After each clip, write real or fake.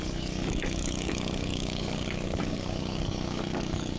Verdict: fake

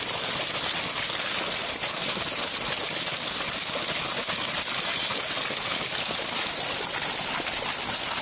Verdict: real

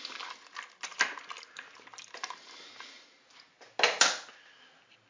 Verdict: real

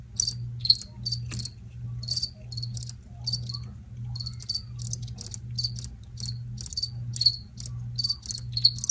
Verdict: real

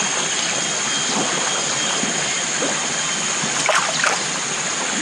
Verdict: real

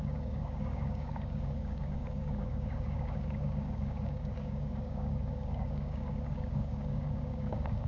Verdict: fake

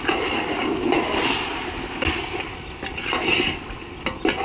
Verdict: real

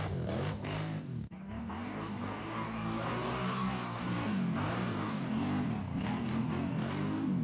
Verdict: fake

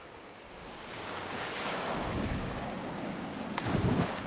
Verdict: fake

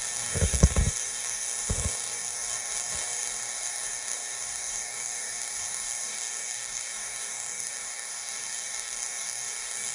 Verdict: fake